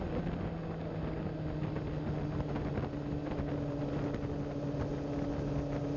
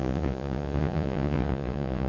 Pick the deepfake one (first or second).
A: second